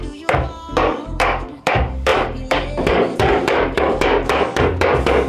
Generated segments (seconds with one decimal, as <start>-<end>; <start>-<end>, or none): 0.0-5.3